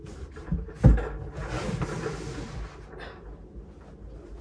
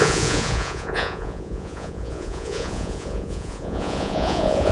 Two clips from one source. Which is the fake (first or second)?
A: second